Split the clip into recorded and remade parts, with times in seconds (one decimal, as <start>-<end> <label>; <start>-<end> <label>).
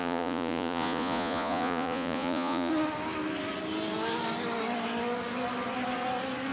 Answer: 0.0-2.7 remade; 2.7-6.5 recorded